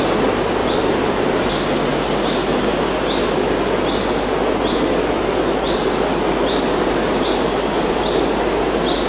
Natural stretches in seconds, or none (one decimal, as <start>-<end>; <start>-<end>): 0.0-0.6; 1.5-9.1

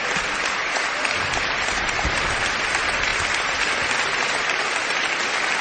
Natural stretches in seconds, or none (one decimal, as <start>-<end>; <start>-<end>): 0.0-0.6; 2.4-5.6

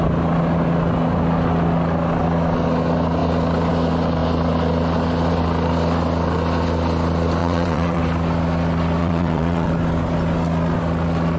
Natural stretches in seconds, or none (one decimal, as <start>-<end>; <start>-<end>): 0.0-7.4; 8.0-9.0; 9.7-11.4

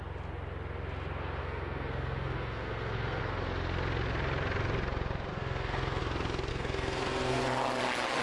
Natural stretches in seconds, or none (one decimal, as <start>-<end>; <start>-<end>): 0.0-1.4; 3.2-5.3; 6.0-6.5; 7.4-8.2

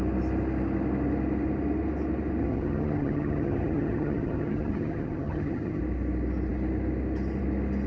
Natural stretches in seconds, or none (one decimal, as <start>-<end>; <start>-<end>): 0.0-2.4; 5.8-7.9

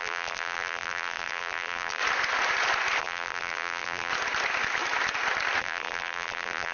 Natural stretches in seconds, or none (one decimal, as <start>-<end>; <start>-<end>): 2.0-3.0; 4.1-5.6

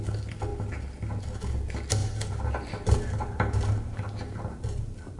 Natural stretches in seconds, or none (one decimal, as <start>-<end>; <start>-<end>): 0.0-2.0